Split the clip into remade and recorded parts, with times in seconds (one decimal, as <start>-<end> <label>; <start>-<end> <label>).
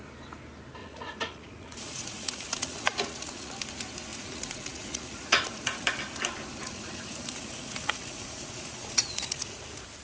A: 0.0-0.8 recorded; 0.8-3.5 remade; 3.5-4.1 recorded; 4.1-5.9 remade; 5.9-6.6 recorded; 6.6-9.6 remade; 9.6-10.0 recorded